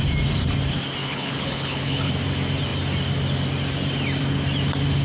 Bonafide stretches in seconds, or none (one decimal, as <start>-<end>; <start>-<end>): 0.0-1.0; 2.1-5.0